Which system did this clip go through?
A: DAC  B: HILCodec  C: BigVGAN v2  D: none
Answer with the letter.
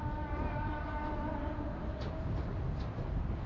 D